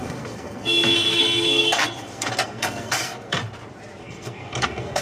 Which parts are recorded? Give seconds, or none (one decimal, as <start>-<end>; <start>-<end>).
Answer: 3.4-4.0